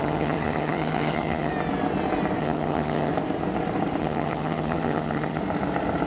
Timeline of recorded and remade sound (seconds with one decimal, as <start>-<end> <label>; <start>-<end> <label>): 0.0-1.5 remade; 1.5-2.4 recorded; 2.4-3.1 remade; 3.1-4.0 recorded; 4.0-5.4 remade; 5.4-6.1 recorded